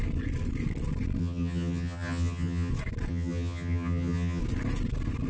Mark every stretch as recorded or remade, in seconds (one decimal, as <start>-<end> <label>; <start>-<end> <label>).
0.0-1.2 recorded; 1.2-2.7 remade; 2.7-3.1 recorded; 3.1-4.4 remade; 4.4-5.3 recorded